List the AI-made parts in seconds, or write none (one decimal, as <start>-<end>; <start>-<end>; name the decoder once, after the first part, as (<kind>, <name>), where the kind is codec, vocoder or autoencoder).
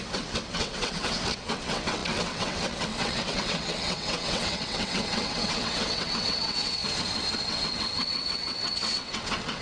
0.0-6.8 (vocoder, WaveNeXt); 7.3-9.6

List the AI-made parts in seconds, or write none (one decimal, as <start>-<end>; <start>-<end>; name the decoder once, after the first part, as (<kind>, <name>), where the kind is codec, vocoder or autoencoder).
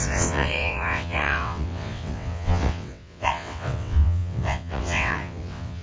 0.0-5.8 (vocoder, WaveNeXt)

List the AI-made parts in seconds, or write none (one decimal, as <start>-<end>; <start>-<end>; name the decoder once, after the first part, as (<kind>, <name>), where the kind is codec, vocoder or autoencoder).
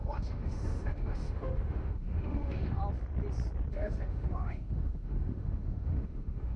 0.0-2.8 (autoencoder, DAC-VAE); 3.7-6.6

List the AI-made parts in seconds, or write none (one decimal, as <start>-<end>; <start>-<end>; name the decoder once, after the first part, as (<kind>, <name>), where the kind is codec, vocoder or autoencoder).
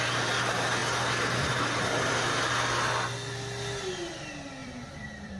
4.6-5.4 (vocoder, BigVGAN v2)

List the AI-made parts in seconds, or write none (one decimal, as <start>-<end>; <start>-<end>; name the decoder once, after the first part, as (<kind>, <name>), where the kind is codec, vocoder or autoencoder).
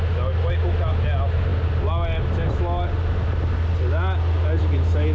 none